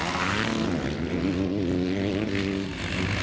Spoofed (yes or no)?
no